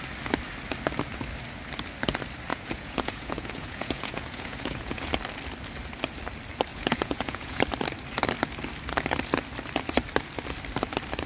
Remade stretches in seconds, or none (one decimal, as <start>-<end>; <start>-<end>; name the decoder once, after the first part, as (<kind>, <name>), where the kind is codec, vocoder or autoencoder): 2.5-5.1 (vocoder, Vocos); 6.7-7.6